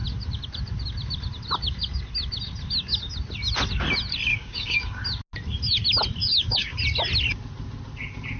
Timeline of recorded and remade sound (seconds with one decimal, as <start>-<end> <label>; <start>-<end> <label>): 0.0-4.3 recorded; 4.3-5.0 remade; 5.0-6.2 recorded; 6.2-6.8 remade; 6.8-8.4 recorded